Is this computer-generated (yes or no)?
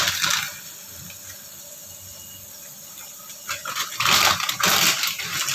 no